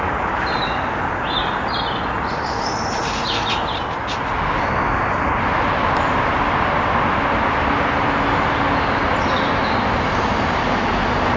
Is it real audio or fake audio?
real